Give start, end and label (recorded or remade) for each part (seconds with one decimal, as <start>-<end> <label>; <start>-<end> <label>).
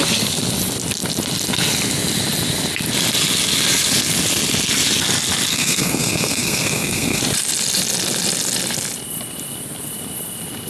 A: 0.0-5.5 recorded; 5.5-7.2 remade; 7.2-10.7 recorded